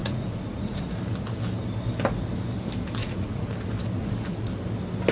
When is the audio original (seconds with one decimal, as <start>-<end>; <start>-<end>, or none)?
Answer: 1.0-3.0; 3.5-4.0; 4.5-5.1